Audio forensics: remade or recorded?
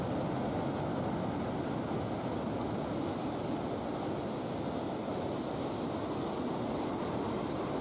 recorded